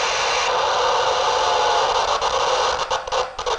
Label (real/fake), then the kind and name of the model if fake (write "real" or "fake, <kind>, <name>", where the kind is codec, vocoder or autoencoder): real